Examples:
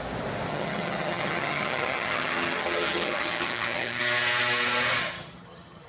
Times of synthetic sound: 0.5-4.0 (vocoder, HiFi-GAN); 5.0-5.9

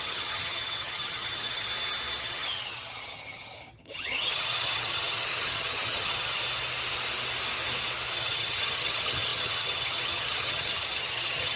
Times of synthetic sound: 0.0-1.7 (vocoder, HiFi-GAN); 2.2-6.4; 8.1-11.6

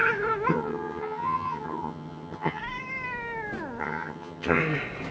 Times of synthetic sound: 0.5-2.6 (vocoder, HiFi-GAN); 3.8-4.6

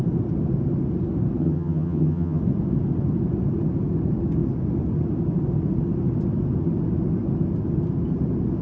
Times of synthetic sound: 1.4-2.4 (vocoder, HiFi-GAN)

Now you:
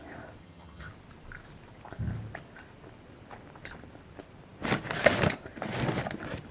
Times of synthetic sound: 0.4-0.9 (vocoder, HiFi-GAN)